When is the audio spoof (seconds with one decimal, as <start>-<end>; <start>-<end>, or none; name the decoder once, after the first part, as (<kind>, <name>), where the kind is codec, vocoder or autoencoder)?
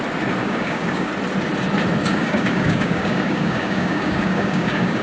0.4-1.1 (codec, DAC); 2.0-5.0